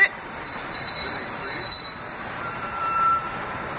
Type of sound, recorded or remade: remade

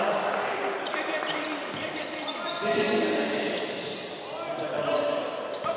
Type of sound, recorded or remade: recorded